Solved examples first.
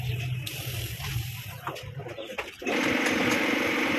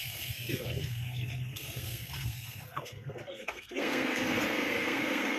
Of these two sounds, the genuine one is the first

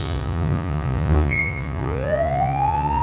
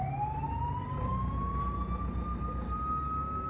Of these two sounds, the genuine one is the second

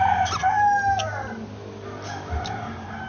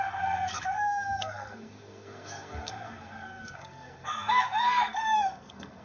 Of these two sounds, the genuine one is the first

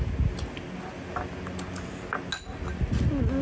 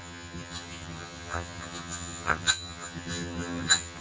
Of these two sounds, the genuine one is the first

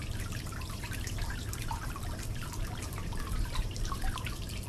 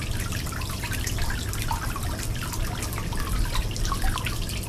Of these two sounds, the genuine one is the second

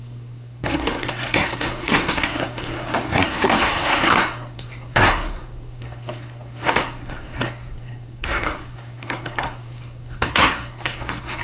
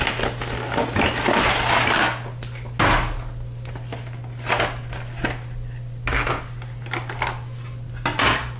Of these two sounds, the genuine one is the second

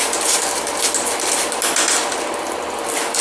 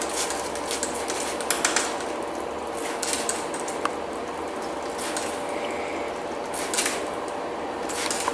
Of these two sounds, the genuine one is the second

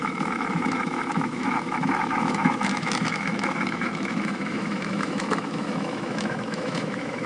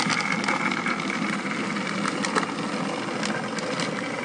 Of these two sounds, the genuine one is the second